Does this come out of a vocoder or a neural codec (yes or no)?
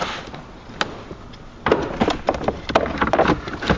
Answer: no